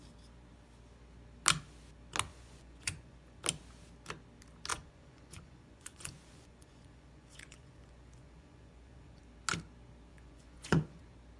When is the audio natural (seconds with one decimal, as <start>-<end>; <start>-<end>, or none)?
0.0-2.3; 3.4-4.7; 9.2-10.1; 11.0-11.4